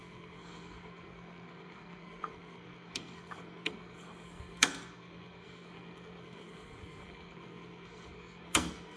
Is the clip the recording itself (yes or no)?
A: no